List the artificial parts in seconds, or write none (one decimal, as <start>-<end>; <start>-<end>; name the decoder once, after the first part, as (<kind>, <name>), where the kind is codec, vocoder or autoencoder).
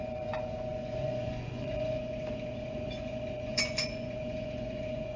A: 0.0-5.2 (vocoder, Vocos)